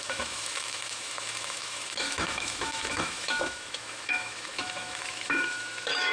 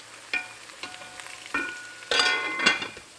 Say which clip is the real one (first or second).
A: second